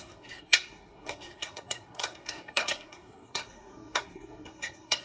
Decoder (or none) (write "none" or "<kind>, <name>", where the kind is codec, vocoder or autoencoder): codec, SNAC